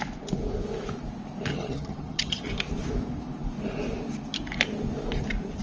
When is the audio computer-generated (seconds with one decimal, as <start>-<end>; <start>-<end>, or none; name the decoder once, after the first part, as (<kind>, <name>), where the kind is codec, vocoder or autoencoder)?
1.5-2.4 (vocoder, HiFi-GAN)